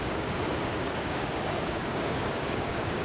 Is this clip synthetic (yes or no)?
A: yes